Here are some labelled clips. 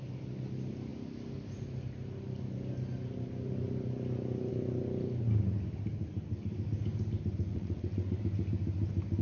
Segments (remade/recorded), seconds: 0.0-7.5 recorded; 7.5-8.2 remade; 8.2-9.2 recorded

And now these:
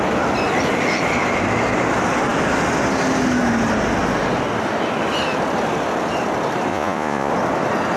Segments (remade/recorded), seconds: 0.0-6.7 recorded; 6.7-7.3 remade; 7.3-8.0 recorded

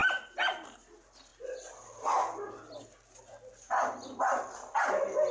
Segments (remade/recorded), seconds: 0.0-5.3 recorded

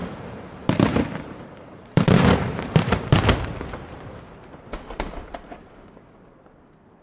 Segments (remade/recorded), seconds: 0.0-4.2 remade; 4.2-7.0 recorded

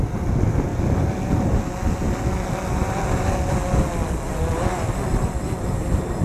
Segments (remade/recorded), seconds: 0.0-6.2 recorded

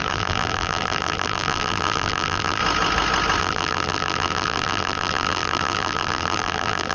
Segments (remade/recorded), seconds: 0.0-2.6 remade; 2.6-3.4 recorded; 3.4-6.9 remade